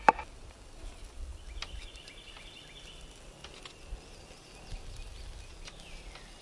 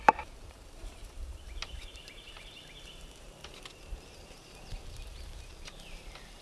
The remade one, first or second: second